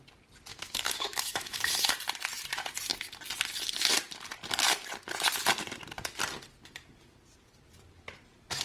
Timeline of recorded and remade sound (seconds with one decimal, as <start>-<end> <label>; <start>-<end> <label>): 0.0-0.5 recorded; 0.5-1.9 remade; 1.9-8.6 recorded